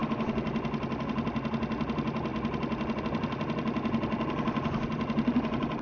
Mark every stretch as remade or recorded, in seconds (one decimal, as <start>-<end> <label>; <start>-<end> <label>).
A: 0.0-5.8 recorded